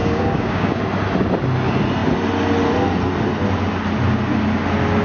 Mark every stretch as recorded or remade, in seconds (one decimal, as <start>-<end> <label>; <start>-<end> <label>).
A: 0.0-0.8 remade; 0.8-5.0 recorded